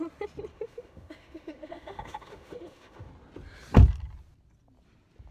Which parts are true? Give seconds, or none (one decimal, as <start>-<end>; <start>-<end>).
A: 0.0-0.5; 3.1-5.3